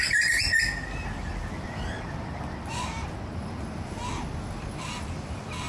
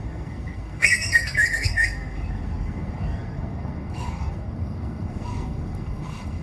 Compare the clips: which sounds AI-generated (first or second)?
second